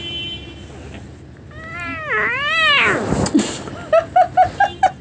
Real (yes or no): yes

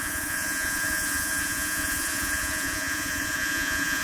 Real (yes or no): no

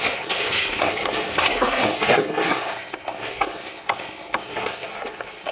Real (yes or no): no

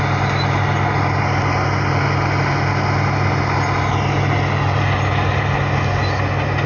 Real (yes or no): yes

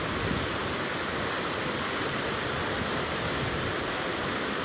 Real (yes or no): yes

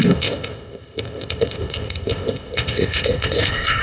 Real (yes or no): no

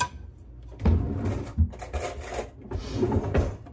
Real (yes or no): yes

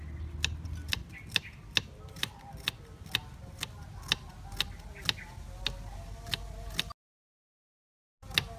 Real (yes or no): yes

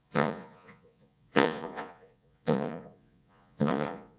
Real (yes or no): no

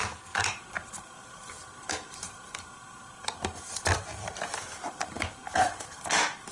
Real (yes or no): yes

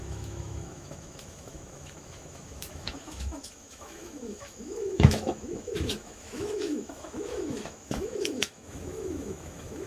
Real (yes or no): no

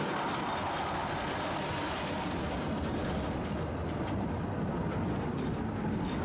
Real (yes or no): yes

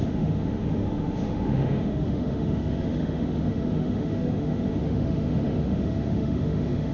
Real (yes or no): no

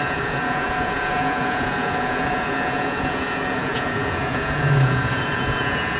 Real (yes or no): no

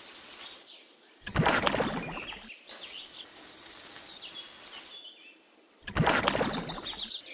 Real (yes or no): yes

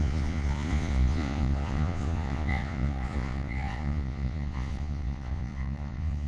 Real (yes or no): no